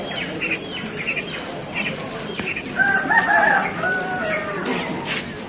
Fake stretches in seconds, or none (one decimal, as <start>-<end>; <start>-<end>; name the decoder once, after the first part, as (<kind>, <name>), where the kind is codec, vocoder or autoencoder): 1.6-4.8 (vocoder, BigVGAN v2)